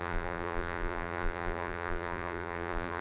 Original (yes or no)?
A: no